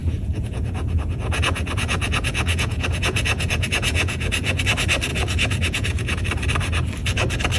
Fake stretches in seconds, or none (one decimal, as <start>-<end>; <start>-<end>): 0.0-4.6; 5.1-6.2

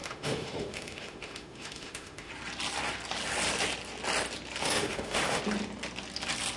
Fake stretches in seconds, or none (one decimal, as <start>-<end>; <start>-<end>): 0.0-2.3; 4.6-5.4

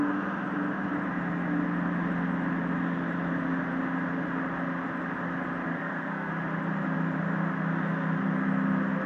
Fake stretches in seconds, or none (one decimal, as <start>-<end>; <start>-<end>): 5.7-6.3